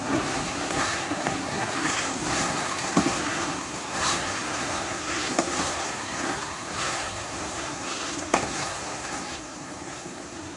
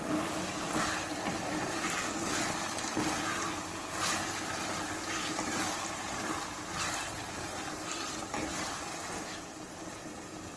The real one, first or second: second